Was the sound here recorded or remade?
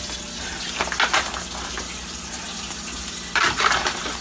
recorded